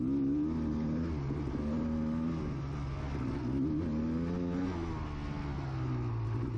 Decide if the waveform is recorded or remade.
recorded